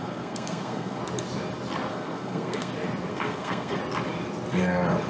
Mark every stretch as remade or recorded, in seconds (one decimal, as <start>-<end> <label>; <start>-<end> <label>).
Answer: 0.0-1.0 remade; 1.0-1.9 recorded; 1.9-2.7 remade; 2.7-3.1 recorded; 3.1-3.8 remade; 3.8-5.1 recorded